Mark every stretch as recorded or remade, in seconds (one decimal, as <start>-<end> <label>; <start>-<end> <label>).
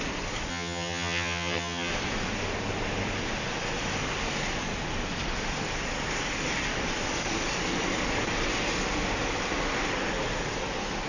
0.0-0.5 recorded; 0.5-1.9 remade; 1.9-11.1 recorded